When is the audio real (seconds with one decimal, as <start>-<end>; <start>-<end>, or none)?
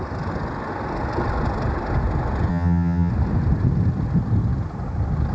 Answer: 0.0-2.5; 3.1-5.3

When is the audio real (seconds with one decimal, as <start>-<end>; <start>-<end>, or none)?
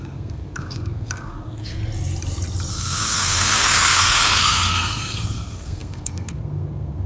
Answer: 1.8-2.7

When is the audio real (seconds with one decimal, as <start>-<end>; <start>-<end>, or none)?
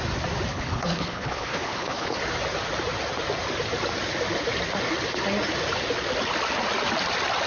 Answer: 0.0-0.5; 2.2-7.5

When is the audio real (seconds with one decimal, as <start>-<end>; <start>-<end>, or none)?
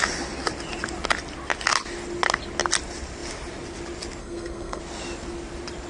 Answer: 0.0-4.2; 4.8-5.9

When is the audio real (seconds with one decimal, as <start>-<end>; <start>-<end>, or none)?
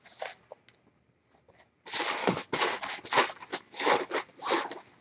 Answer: 0.0-2.2; 2.8-3.5; 4.1-5.0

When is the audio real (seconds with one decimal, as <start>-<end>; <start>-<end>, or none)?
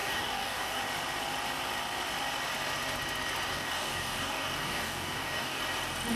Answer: 0.8-3.5; 5.6-6.2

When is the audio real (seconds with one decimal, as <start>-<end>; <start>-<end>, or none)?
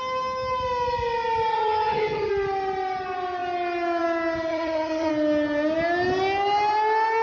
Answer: 0.0-1.5; 2.3-4.5; 5.1-7.2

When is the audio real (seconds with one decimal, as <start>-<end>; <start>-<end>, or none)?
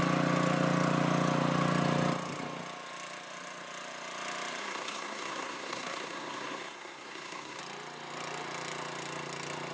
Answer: 0.0-4.6; 7.6-9.7